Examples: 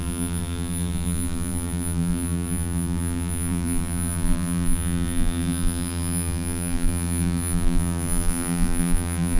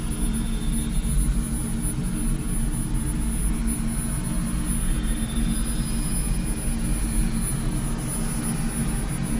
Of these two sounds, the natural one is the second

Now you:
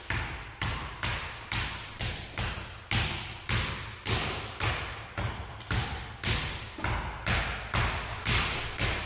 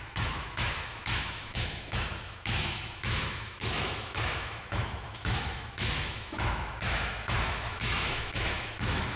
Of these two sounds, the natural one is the first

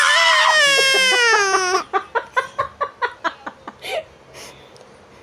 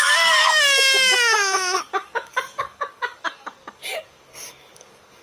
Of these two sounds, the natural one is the first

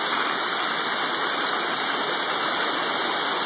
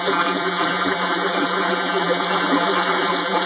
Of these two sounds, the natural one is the first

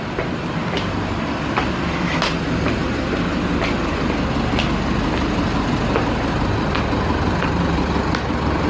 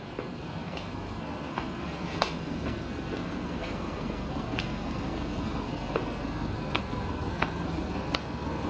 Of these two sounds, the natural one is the first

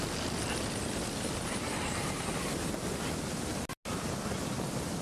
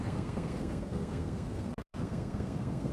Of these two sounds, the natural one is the first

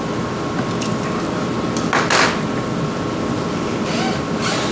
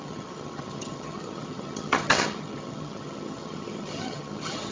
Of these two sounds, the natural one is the first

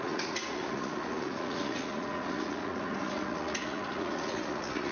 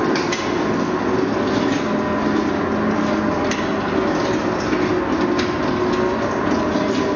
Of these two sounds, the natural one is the second